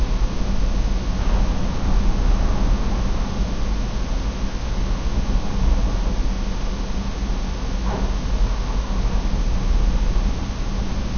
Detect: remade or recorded recorded